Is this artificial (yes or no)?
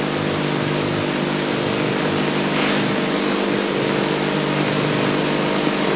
no